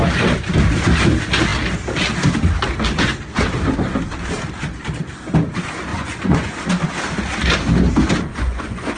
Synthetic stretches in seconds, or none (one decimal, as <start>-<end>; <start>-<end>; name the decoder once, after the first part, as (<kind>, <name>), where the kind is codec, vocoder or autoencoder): 5.9-6.5 (vocoder, Vocos); 8.3-9.0